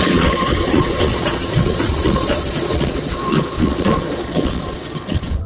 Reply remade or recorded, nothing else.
remade